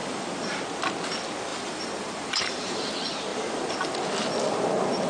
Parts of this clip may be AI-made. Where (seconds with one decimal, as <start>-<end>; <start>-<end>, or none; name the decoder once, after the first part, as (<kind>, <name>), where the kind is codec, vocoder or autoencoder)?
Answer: 0.0-0.6 (vocoder, BigVGAN v2); 1.5-2.9; 3.3-4.0